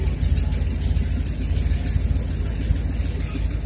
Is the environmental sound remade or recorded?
recorded